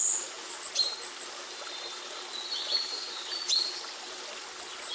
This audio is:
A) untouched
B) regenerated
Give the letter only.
A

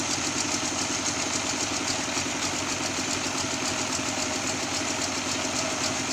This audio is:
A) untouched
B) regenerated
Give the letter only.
A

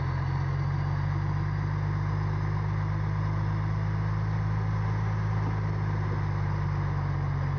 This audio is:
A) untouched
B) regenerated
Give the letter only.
A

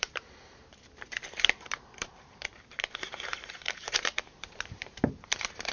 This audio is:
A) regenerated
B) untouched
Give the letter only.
A